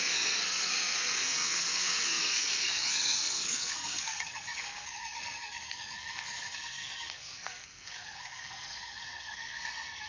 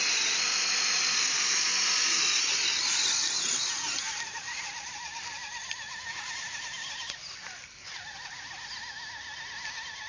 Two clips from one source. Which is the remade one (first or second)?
first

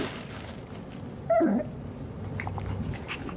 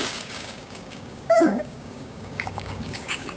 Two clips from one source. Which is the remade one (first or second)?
second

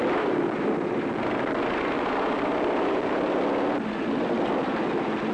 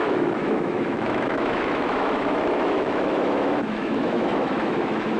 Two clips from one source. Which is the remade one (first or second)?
second